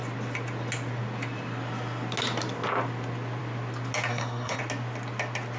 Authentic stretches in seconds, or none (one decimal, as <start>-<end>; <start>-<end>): 0.0-4.1; 4.6-5.6